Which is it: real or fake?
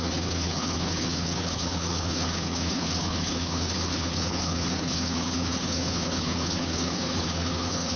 fake